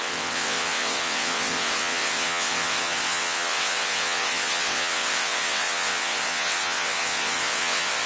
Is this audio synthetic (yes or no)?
yes